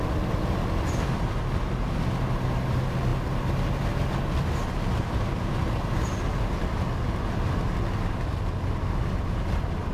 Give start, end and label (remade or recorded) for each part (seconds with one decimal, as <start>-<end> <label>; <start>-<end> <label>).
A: 0.0-9.9 recorded